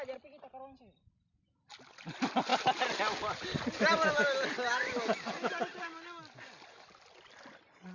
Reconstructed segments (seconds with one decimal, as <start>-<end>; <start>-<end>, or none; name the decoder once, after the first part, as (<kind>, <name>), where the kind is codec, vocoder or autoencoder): none

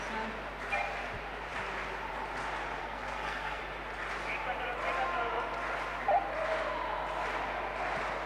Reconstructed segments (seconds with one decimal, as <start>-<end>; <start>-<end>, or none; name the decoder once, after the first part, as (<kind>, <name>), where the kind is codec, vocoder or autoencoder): 2.8-3.6 (codec, SNAC)

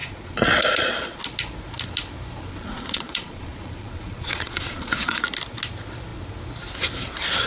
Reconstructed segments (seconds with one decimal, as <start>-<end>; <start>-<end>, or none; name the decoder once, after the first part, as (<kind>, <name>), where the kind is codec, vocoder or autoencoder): 0.0-1.2 (vocoder, Vocos); 2.5-5.2

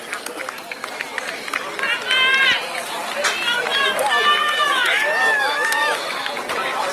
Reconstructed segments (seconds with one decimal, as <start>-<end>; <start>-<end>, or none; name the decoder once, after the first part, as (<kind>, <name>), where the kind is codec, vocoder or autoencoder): 4.4-6.3 (autoencoder, DAC-VAE)

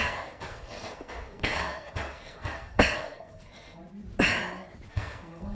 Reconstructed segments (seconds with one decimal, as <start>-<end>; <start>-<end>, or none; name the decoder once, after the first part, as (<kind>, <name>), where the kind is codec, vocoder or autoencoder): 0.0-3.8 (codec, SNAC); 4.9-5.5

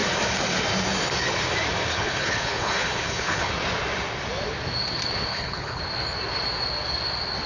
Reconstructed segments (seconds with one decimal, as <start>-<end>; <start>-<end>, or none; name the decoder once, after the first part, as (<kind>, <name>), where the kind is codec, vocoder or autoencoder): 1.9-3.5 (codec, HILCodec); 5.3-5.8

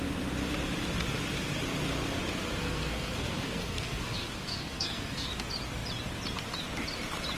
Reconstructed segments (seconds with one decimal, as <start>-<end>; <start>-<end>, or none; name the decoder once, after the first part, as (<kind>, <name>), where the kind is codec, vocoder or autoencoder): 2.6-5.3 (codec, SNAC)

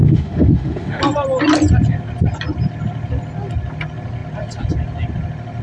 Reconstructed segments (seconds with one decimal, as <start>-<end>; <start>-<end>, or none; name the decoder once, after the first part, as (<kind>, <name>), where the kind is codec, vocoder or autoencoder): 0.0-1.0 (autoencoder, DAC-VAE)